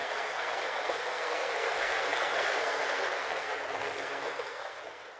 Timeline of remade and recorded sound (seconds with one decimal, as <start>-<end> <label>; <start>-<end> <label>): 0.0-5.2 remade